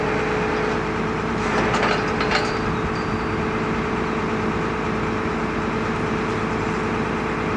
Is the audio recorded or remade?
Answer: recorded